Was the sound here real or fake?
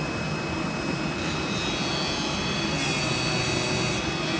real